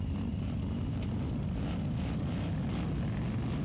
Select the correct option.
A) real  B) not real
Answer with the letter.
A